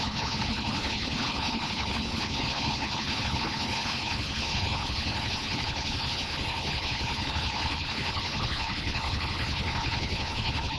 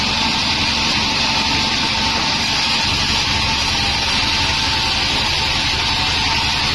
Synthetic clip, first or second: first